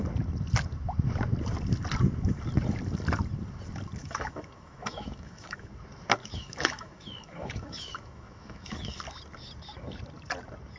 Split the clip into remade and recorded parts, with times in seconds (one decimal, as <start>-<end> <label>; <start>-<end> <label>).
0.0-4.0 recorded; 4.0-5.7 remade; 5.7-6.2 recorded; 6.2-9.0 remade; 9.0-10.8 recorded